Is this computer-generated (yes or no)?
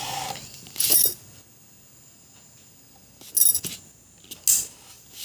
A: no